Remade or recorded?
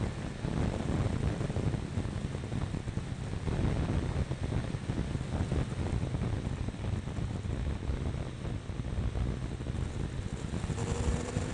recorded